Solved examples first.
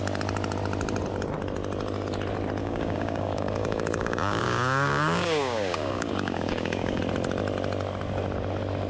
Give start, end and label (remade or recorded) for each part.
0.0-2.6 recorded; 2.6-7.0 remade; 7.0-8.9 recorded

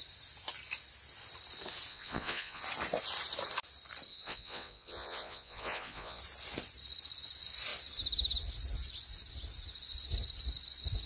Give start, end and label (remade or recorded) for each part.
0.0-1.9 recorded; 1.9-2.6 remade; 2.6-4.1 recorded; 4.1-6.2 remade; 6.2-11.1 recorded

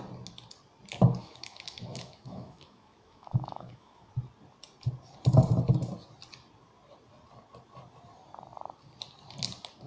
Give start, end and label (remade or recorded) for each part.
0.0-1.2 recorded; 1.2-4.1 remade; 4.1-9.9 recorded

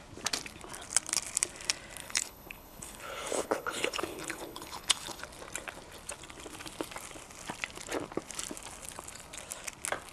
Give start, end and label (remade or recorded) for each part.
0.0-2.0 recorded; 2.0-5.2 remade; 5.2-10.1 recorded

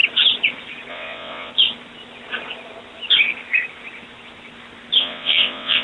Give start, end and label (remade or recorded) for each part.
0.0-0.9 recorded; 0.9-1.5 remade; 1.5-5.0 recorded; 5.0-5.8 remade